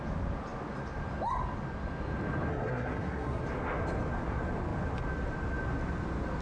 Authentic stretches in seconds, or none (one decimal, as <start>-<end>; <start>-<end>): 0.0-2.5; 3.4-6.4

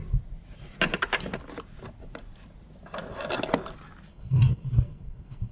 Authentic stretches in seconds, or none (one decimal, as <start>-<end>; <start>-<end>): 0.0-4.1

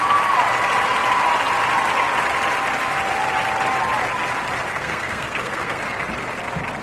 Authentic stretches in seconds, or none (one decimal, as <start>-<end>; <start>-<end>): 0.0-4.7; 5.8-6.8

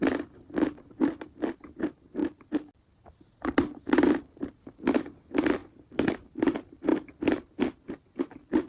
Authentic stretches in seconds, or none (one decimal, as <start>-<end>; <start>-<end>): 0.0-8.7

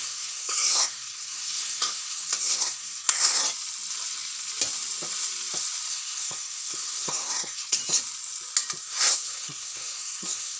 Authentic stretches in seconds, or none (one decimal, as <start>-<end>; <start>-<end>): 3.4-5.9; 7.8-8.8

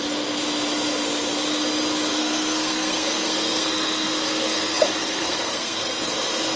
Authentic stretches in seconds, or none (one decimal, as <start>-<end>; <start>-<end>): 0.0-2.1; 6.1-6.6

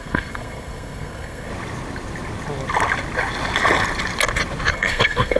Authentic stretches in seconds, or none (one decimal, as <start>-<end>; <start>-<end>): 1.5-4.7

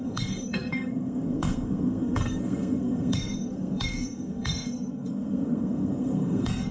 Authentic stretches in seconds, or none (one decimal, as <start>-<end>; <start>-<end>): none